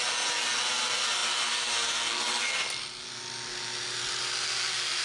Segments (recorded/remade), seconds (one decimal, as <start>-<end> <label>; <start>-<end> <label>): 0.0-5.0 recorded